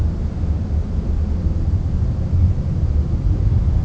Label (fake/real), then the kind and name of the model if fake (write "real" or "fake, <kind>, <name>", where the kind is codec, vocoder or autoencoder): real